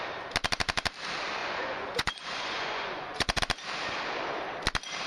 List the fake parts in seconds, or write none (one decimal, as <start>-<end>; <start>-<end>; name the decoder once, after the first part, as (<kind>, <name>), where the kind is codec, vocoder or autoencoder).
1.4-3.4 (vocoder, Vocos)